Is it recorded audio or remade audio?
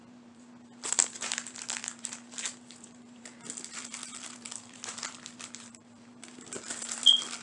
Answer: remade